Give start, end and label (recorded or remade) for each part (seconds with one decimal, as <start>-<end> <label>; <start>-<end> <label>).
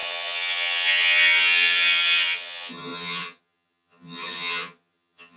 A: 0.0-5.4 remade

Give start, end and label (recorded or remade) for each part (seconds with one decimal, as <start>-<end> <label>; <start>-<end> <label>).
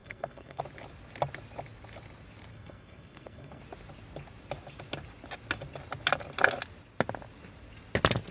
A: 0.0-0.6 remade; 0.6-2.5 recorded; 2.5-3.6 remade; 3.6-8.3 recorded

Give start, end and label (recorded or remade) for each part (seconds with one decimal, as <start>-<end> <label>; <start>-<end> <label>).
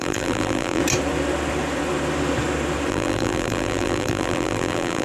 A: 0.0-0.8 remade; 0.8-2.9 recorded; 2.9-5.0 remade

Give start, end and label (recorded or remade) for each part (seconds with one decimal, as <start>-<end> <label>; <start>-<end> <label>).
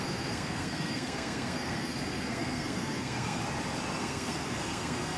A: 0.0-3.4 remade; 3.4-4.0 recorded; 4.0-5.2 remade